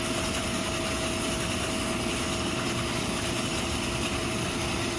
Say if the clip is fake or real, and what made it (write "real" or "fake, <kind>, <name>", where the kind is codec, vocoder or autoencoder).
real